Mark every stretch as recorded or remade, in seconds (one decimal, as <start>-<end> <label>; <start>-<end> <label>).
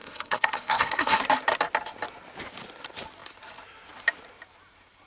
0.0-1.2 remade; 1.2-5.1 recorded